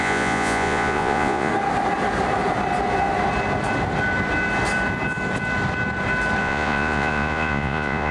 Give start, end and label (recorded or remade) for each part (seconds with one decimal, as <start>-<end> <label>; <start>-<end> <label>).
0.0-1.5 remade; 1.5-6.4 recorded; 6.4-8.1 remade